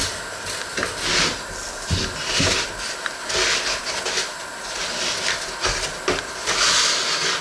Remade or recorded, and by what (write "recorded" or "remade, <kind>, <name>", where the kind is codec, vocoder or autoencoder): recorded